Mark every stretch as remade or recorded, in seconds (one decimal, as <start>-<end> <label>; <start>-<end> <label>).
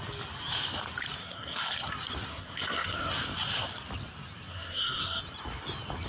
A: 0.0-1.2 recorded; 1.2-1.9 remade; 1.9-2.3 recorded; 2.3-3.1 remade; 3.1-4.5 recorded; 4.5-5.2 remade; 5.2-6.1 recorded